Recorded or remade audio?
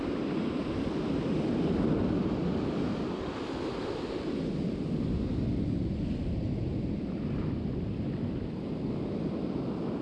recorded